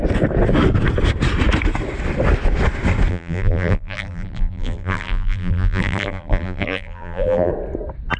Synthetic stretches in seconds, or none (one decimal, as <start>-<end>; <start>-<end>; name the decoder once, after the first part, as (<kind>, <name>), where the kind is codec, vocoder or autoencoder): 3.1-7.5 (vocoder, BigVGAN v2)